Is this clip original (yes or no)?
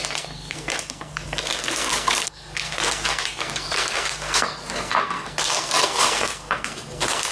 no